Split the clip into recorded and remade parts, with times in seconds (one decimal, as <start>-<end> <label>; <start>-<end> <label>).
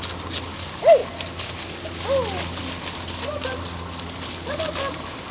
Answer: 0.0-5.3 recorded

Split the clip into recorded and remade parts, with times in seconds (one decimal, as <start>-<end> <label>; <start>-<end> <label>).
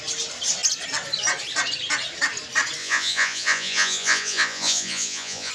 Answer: 0.0-2.8 recorded; 2.8-5.5 remade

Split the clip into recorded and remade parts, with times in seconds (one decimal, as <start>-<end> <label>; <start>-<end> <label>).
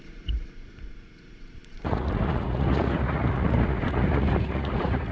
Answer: 0.0-5.1 remade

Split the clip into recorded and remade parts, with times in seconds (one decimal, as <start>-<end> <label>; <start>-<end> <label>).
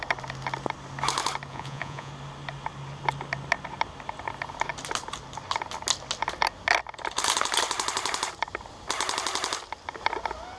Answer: 0.0-1.5 recorded; 1.5-2.1 remade; 2.1-10.6 recorded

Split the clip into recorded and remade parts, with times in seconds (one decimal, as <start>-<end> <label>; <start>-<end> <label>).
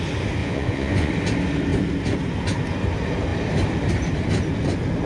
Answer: 0.0-0.4 recorded; 0.4-1.1 remade; 1.1-5.1 recorded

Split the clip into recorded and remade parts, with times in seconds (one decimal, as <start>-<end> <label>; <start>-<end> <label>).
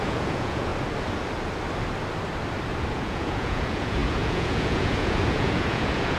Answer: 0.0-0.7 remade; 0.7-2.9 recorded; 2.9-6.2 remade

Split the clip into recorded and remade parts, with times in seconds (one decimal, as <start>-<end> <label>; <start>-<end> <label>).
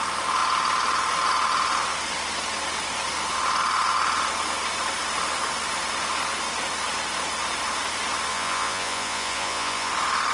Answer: 0.0-8.3 recorded; 8.3-9.9 remade; 9.9-10.3 recorded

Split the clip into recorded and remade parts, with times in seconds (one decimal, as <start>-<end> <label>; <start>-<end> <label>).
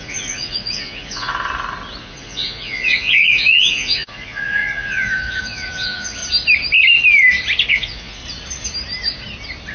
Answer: 0.0-1.3 remade; 1.3-2.0 recorded; 2.0-6.2 remade; 6.2-7.7 recorded; 7.7-8.2 remade; 8.2-9.7 recorded